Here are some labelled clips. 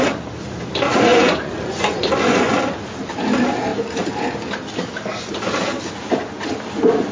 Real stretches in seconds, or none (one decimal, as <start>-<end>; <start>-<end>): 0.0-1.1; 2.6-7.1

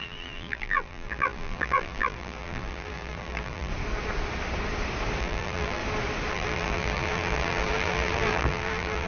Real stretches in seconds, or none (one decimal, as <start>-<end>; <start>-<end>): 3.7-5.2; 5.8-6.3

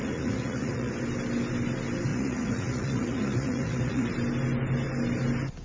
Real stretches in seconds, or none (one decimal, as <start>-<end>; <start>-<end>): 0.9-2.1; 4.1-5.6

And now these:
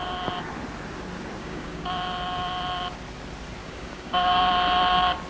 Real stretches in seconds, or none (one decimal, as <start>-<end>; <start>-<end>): 0.0-1.4; 1.9-3.6; 4.4-5.3

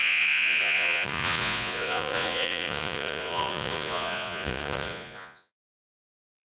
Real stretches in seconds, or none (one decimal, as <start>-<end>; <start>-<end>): none

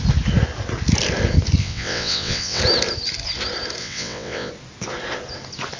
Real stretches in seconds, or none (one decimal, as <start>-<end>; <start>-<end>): 0.0-1.6; 2.6-3.8; 4.5-5.8